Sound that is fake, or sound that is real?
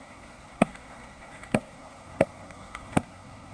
fake